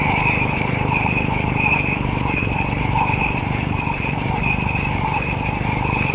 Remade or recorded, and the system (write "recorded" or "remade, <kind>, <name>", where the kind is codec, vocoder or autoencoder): recorded